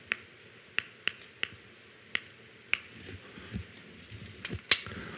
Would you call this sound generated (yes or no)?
no